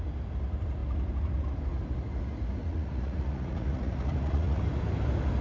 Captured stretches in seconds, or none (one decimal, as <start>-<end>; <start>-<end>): 0.0-2.6; 4.6-5.4